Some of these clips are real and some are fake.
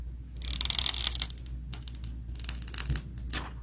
real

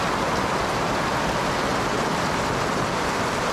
real